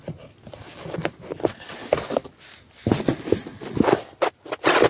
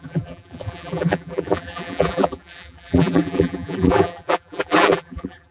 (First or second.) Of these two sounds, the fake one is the second